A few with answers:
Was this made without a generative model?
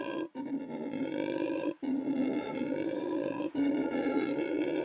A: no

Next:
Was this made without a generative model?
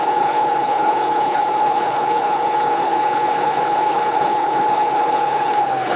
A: no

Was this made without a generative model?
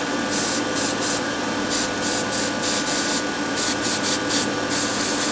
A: yes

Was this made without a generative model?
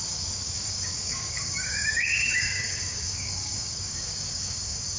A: no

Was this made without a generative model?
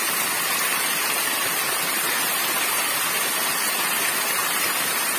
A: yes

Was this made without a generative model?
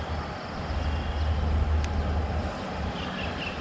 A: yes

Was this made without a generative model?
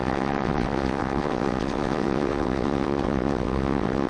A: no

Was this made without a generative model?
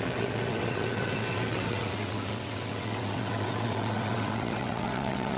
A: no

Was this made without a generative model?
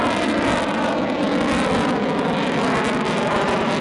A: yes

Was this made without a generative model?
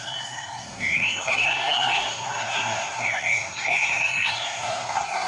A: no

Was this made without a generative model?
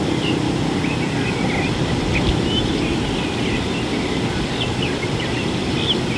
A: yes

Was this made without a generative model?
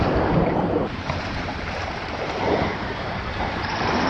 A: no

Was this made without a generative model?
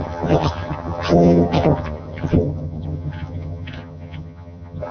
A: no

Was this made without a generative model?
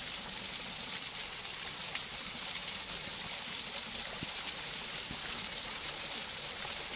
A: yes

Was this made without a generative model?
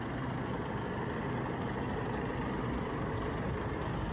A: yes